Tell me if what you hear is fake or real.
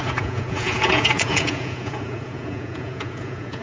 fake